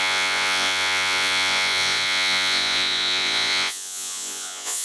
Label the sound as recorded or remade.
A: remade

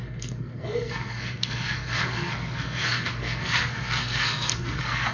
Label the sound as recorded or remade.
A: remade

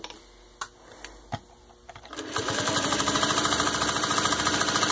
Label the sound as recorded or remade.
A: recorded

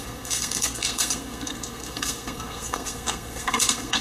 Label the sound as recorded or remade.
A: remade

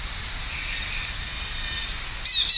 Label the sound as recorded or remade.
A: recorded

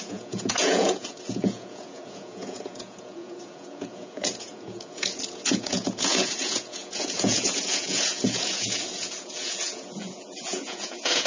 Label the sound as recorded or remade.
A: remade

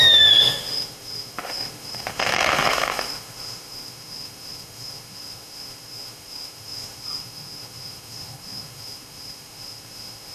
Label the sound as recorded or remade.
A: remade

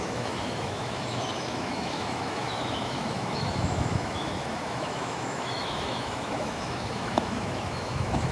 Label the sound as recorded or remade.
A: remade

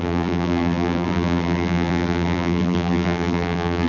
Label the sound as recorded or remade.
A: remade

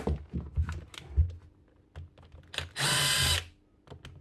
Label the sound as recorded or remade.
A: recorded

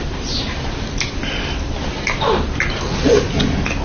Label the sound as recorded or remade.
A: recorded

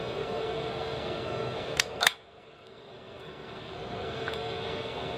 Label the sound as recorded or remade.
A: remade